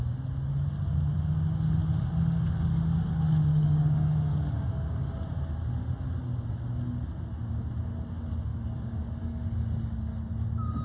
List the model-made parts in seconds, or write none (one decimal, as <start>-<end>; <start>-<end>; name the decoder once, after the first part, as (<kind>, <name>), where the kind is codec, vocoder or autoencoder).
3.5-5.1 (codec, DAC); 8.5-9.4